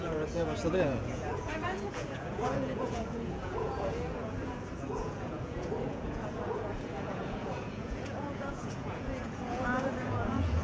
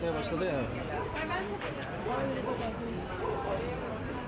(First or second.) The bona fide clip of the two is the second